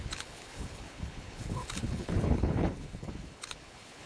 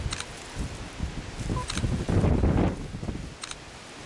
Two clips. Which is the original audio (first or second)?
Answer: second